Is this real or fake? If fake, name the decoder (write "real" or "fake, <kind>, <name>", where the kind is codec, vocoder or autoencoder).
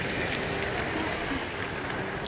real